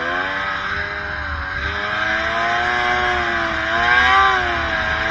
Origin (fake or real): real